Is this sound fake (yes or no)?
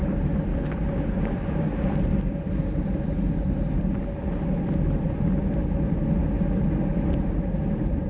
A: no